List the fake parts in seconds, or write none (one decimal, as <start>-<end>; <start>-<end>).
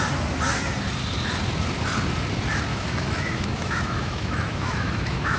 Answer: 2.7-5.4